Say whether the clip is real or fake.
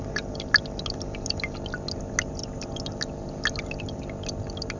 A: real